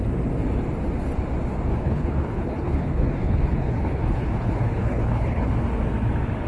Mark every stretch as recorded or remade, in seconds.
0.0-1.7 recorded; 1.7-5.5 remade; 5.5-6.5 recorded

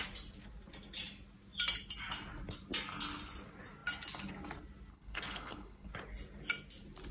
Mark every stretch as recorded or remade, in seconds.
0.0-4.9 recorded; 4.9-5.9 remade; 5.9-7.1 recorded

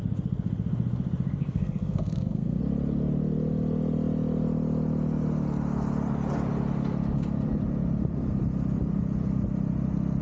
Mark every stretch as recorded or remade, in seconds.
0.0-1.4 recorded; 1.4-2.6 remade; 2.6-10.2 recorded

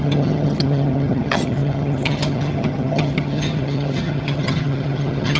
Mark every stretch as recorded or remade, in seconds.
0.0-5.4 remade

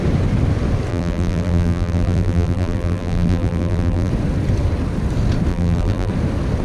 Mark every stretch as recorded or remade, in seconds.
0.0-0.9 recorded; 0.9-4.1 remade; 4.1-5.5 recorded; 5.5-6.1 remade; 6.1-6.6 recorded

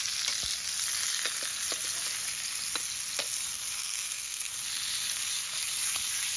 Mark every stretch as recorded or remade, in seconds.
0.0-3.8 recorded; 3.8-4.5 remade; 4.5-6.4 recorded